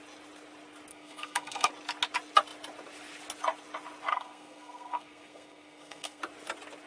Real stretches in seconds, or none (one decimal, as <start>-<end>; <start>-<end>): 0.0-0.9; 1.7-4.1; 6.2-6.9